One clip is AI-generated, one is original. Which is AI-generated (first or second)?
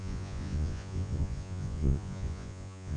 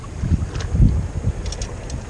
first